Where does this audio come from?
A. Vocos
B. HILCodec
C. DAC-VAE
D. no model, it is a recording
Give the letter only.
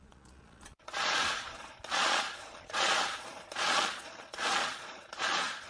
A